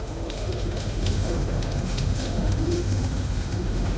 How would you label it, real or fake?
fake